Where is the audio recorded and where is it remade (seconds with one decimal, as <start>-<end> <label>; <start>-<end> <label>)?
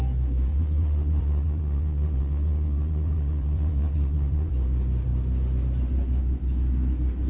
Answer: 0.0-0.5 recorded; 0.5-4.5 remade; 4.5-7.3 recorded